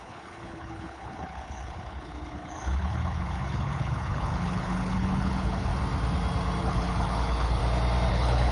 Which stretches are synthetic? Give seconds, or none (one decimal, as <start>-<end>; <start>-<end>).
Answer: 0.0-5.7; 6.6-7.6; 8.1-8.5